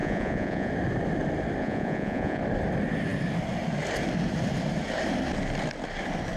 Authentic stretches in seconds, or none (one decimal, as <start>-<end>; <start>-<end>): 0.7-1.6; 2.4-6.4